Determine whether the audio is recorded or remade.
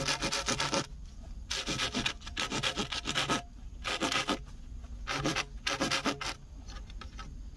recorded